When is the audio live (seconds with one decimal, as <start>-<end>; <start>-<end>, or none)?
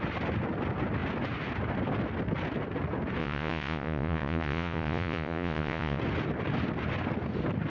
0.0-3.2; 6.0-7.7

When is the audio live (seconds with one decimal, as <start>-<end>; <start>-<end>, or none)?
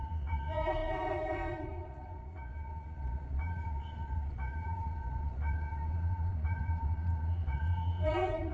none